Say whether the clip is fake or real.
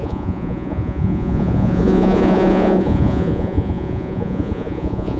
fake